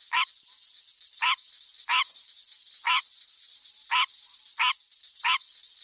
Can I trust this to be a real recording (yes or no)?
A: yes